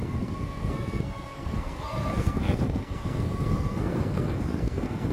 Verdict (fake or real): fake